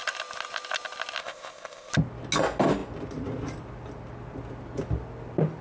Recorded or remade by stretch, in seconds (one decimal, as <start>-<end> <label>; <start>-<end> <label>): 0.0-1.2 recorded; 1.2-1.9 remade; 1.9-5.6 recorded